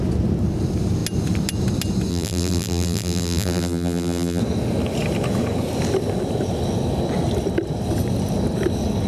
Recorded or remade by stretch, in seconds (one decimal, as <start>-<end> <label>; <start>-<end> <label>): 0.0-2.1 recorded; 2.1-4.4 remade; 4.4-9.1 recorded